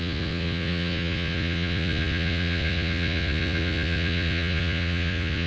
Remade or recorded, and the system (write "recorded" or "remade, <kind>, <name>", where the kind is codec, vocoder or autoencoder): remade, vocoder, Vocos